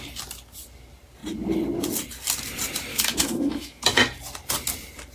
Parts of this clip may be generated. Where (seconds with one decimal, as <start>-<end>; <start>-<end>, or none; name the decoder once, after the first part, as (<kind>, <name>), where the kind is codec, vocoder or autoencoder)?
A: 2.9-3.8 (autoencoder, DAC-VAE)